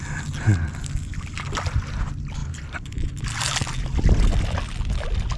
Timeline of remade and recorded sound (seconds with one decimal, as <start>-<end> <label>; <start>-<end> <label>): 0.0-2.4 recorded; 2.4-3.2 remade; 3.2-5.4 recorded